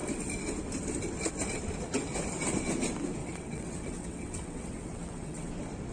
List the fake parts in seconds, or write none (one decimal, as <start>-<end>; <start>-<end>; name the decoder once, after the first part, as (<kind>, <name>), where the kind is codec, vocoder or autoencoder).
3.2-5.5 (vocoder, WaveNeXt)